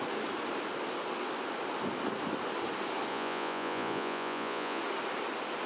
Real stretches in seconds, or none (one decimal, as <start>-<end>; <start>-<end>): 0.0-3.1; 4.8-5.7